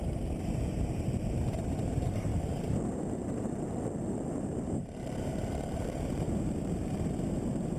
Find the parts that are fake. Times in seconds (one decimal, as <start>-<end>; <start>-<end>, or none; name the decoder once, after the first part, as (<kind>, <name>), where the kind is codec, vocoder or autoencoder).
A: 0.0-2.3 (vocoder, BigVGAN v2); 4.3-7.8